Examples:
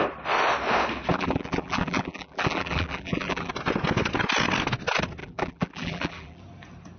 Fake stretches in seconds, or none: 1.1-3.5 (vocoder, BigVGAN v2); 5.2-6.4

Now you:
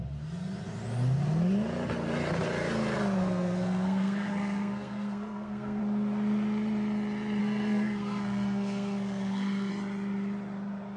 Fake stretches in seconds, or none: 3.2-5.8 (codec, SNAC); 7.4-9.7

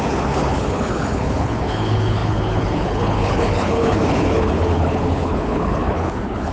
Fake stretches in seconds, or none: 0.0-6.5 (codec, HILCodec)

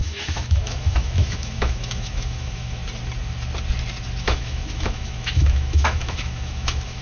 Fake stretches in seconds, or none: 0.0-2.8 (autoencoder, DAC-VAE); 4.2-7.0

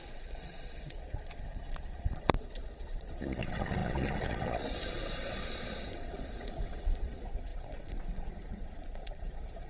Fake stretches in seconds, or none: 0.0-9.7 (vocoder, Vocos)